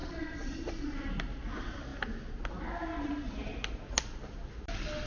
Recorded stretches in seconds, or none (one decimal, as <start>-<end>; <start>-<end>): 1.1-5.1